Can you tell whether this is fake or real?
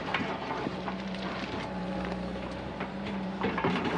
fake